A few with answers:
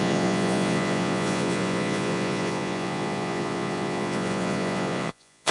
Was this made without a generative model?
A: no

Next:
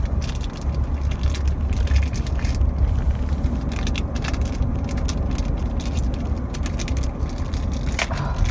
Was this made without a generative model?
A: yes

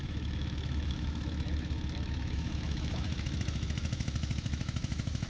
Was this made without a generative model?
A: no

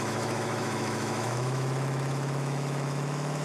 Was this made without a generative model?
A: no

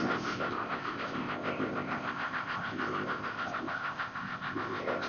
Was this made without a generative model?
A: no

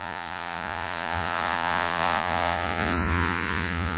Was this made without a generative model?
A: no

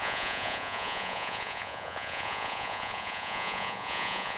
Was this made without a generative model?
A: no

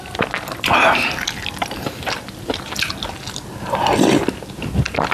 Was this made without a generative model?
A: yes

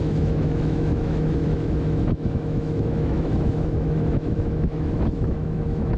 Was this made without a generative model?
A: no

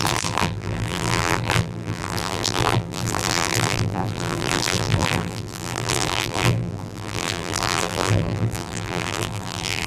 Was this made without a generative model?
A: no